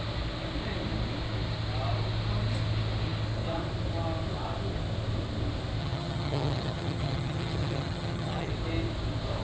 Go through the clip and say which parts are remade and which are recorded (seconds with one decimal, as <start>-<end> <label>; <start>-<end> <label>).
0.0-5.8 recorded; 5.8-8.5 remade; 8.5-9.4 recorded